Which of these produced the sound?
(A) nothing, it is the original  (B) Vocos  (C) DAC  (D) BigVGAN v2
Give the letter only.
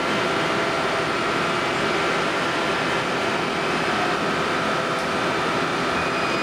A